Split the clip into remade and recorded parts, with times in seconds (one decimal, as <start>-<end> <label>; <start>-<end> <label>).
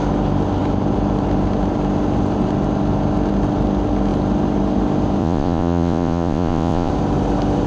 0.0-5.2 recorded; 5.2-6.9 remade; 6.9-7.7 recorded